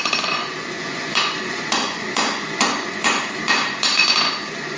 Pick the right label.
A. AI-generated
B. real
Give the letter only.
A